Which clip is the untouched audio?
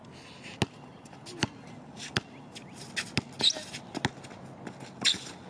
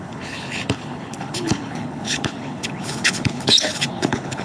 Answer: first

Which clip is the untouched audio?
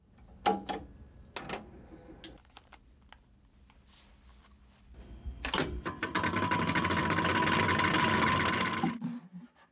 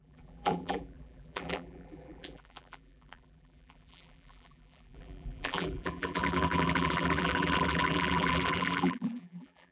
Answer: first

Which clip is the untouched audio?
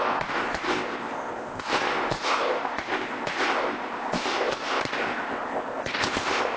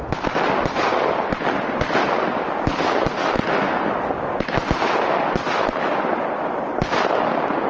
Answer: second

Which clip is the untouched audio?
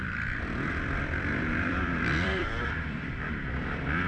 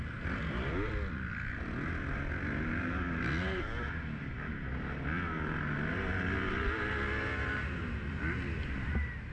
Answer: second